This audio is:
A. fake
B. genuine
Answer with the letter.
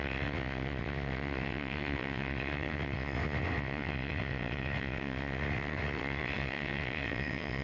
A